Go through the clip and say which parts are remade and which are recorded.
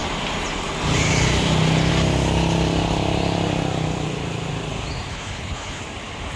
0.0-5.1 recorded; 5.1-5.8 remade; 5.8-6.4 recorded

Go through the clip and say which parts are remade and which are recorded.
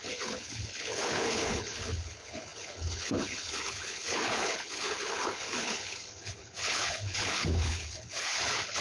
0.0-8.8 remade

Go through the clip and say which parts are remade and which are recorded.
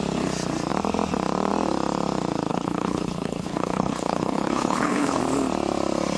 0.0-2.5 recorded; 2.5-5.2 remade; 5.2-6.2 recorded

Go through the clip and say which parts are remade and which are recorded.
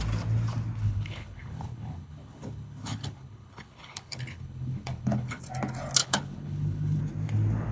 0.0-0.8 recorded; 0.8-5.4 remade; 5.4-6.0 recorded; 6.0-7.0 remade; 7.0-7.7 recorded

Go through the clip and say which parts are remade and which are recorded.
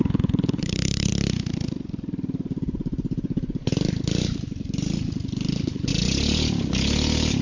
0.0-1.1 remade; 1.1-5.5 recorded; 5.5-5.9 remade; 5.9-7.4 recorded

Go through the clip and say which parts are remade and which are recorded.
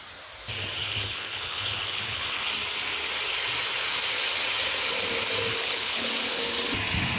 0.0-0.8 recorded; 0.8-2.5 remade; 2.5-5.5 recorded; 5.5-6.1 remade; 6.1-7.2 recorded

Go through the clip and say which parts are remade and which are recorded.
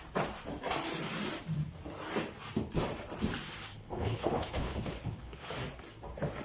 0.0-3.7 recorded; 3.7-5.5 remade; 5.5-6.4 recorded